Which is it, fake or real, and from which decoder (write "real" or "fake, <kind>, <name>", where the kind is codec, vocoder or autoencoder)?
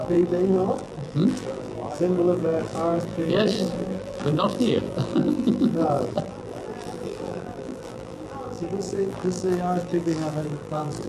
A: fake, vocoder, BigVGAN v2